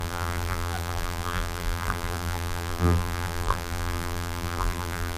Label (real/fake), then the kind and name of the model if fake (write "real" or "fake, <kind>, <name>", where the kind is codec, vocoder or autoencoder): fake, vocoder, BigVGAN v2